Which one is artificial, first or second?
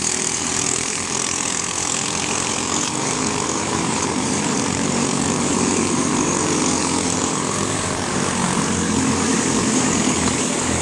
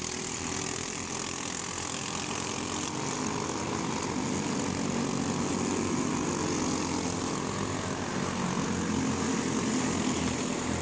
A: first